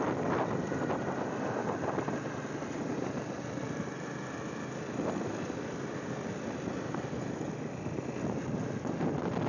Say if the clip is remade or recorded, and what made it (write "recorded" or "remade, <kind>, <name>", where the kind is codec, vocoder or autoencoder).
recorded